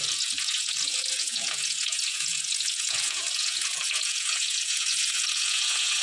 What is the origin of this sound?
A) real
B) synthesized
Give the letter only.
B